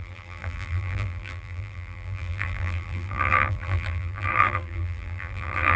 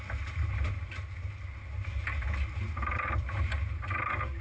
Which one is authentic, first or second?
second